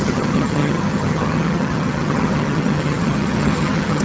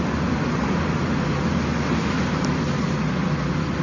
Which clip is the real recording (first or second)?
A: second